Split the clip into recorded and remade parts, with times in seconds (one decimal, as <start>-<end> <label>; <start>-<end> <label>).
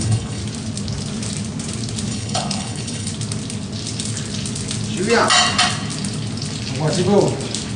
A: 0.0-0.4 remade; 0.4-2.1 recorded; 2.1-3.1 remade; 3.1-7.8 recorded